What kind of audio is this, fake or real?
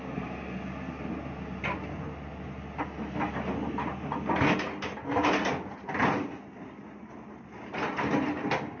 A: real